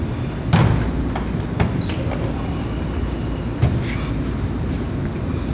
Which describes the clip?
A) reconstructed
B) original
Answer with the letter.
B